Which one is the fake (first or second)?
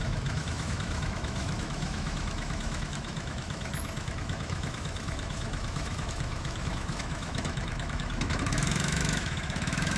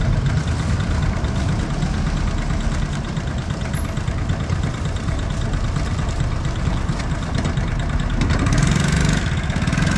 first